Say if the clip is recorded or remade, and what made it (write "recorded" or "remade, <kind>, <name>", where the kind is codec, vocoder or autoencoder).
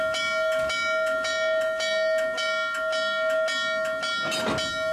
recorded